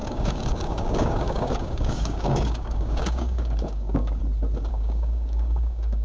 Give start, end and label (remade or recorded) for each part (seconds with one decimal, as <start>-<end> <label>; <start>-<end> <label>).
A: 0.0-4.2 remade; 4.2-4.7 recorded; 4.7-6.0 remade

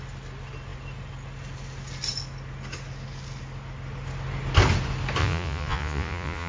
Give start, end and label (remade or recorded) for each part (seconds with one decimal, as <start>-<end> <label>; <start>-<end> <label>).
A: 0.0-5.2 recorded; 5.2-6.5 remade

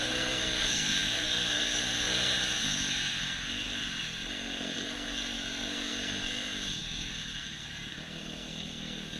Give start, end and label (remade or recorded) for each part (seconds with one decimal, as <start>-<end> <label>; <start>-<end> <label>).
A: 0.0-9.2 remade

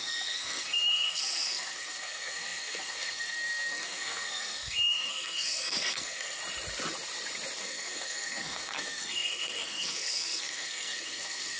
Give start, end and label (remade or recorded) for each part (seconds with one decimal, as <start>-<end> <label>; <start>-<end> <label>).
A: 0.0-6.4 remade; 6.4-7.6 recorded; 7.6-11.6 remade